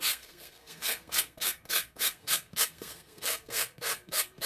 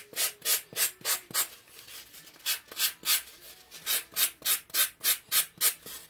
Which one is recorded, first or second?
second